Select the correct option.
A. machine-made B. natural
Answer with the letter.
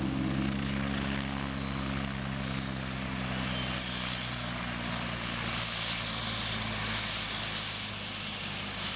B